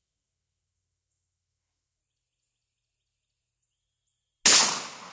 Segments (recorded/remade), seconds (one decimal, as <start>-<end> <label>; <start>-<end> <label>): 0.0-2.0 remade; 2.0-5.1 recorded